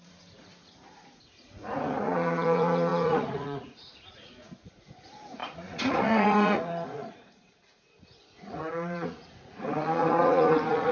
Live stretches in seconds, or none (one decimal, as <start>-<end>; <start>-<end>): none